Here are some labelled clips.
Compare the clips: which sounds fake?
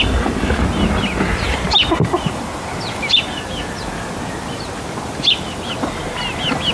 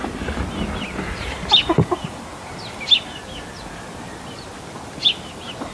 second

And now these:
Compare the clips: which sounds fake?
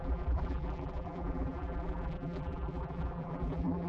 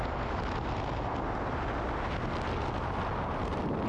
first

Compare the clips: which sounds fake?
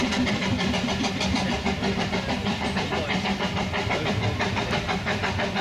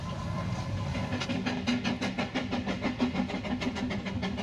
first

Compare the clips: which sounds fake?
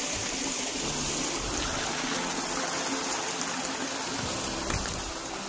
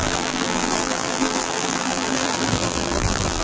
second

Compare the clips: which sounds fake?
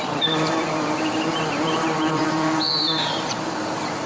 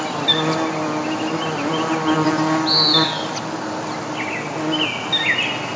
first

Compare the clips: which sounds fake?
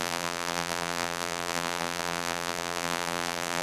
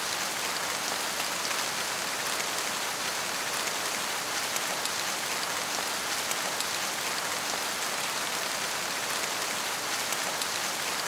first